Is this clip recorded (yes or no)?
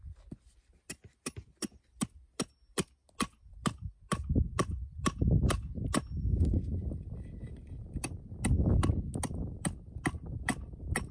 yes